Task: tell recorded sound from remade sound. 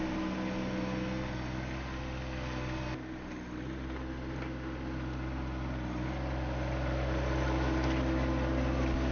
recorded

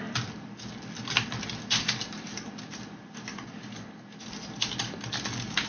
recorded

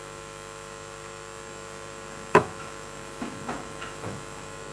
remade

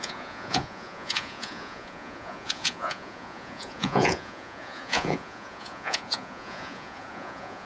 remade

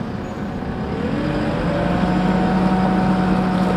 recorded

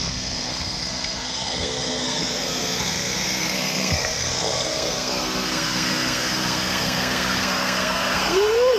remade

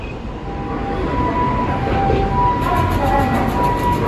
recorded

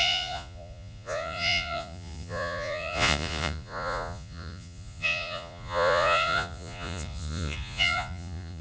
remade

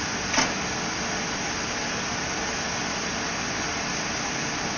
recorded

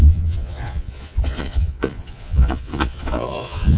remade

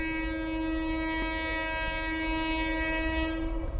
recorded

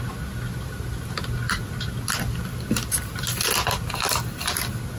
recorded